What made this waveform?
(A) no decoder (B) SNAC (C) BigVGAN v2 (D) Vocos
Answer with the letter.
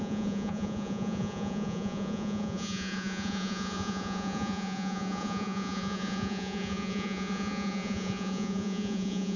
D